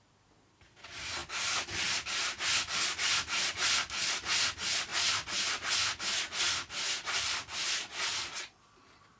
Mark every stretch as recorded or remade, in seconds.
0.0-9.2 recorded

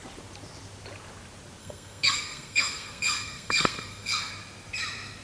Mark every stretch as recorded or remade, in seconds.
0.0-1.6 recorded; 1.6-4.3 remade; 4.3-5.2 recorded